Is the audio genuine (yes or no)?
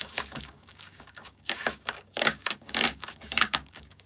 no